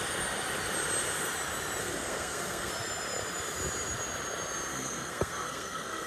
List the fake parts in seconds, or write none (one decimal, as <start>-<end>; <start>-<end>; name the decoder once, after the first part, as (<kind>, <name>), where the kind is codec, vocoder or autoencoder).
1.8-2.7 (codec, SNAC); 4.7-6.1

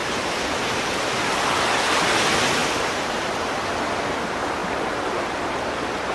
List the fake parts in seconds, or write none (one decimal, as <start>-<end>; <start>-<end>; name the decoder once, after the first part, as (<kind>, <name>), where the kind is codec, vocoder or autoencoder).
0.0-1.0 (vocoder, BigVGAN v2); 2.6-3.5